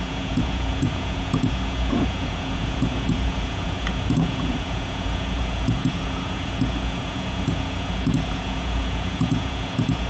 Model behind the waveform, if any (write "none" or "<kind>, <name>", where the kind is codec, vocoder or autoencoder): vocoder, Vocos